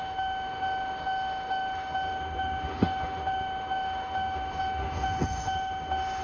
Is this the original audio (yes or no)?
no